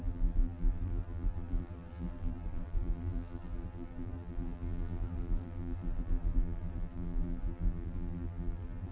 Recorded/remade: remade